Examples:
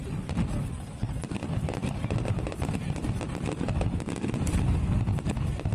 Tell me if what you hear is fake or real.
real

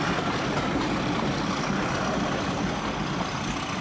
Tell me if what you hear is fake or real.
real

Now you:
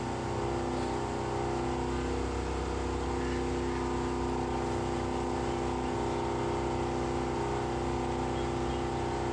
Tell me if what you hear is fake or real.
real